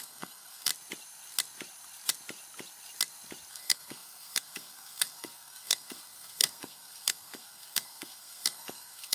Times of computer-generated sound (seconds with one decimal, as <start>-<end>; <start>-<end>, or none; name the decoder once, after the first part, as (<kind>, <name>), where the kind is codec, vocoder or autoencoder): 0.0-0.7 (codec, SNAC); 3.5-9.1